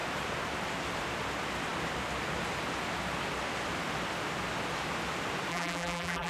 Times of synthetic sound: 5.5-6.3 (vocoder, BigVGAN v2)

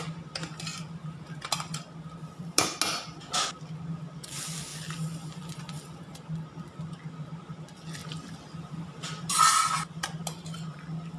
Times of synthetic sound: 0.7-1.2 (vocoder, BigVGAN v2); 8.0-9.4